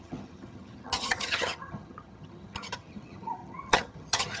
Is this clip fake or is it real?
fake